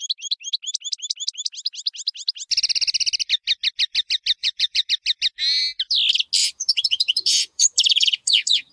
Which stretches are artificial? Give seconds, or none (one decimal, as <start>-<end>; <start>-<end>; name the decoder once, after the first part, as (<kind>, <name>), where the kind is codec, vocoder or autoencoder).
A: 4.4-4.9 (vocoder, Vocos); 6.4-8.7